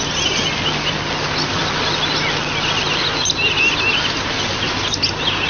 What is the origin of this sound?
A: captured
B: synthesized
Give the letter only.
A